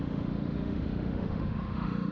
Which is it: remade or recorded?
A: remade